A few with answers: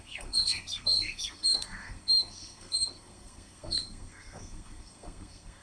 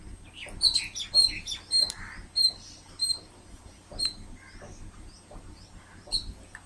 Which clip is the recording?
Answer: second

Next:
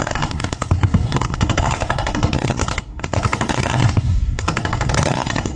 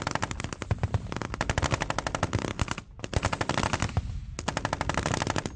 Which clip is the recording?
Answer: second